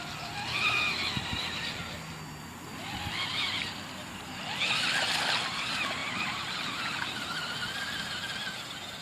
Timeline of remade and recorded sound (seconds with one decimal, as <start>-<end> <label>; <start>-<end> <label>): 0.0-6.0 recorded; 6.0-6.8 remade; 6.8-9.0 recorded